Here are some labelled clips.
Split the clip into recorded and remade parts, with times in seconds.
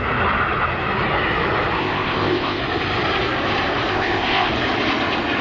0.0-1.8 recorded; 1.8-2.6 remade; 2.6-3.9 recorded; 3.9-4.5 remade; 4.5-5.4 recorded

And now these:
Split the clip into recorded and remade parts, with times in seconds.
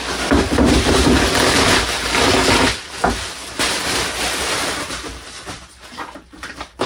0.0-3.4 recorded; 3.4-6.9 remade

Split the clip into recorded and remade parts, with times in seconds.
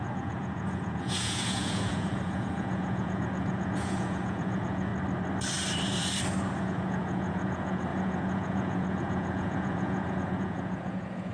0.0-4.9 remade; 4.9-6.6 recorded; 6.6-11.3 remade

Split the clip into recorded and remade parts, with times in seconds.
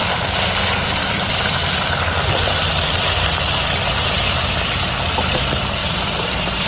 0.0-4.0 recorded; 4.0-6.7 remade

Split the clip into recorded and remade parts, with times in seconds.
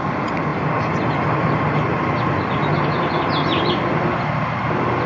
0.0-5.1 recorded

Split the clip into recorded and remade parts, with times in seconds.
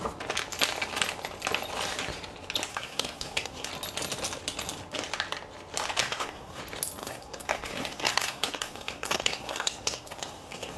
0.0-2.7 recorded; 2.7-3.7 remade; 3.7-6.0 recorded; 6.0-6.6 remade; 6.6-7.0 recorded; 7.0-10.8 remade